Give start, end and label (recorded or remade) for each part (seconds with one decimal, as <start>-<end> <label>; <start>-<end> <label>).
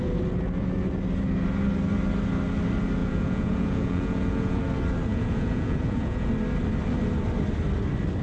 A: 0.0-3.0 recorded; 3.0-4.6 remade; 4.6-5.1 recorded; 5.1-6.3 remade; 6.3-8.2 recorded